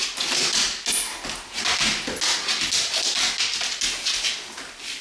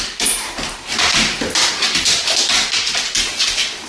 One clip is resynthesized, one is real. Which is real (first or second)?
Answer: first